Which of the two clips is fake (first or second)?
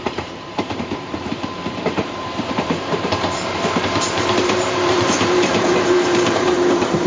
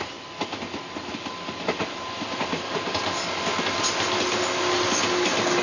first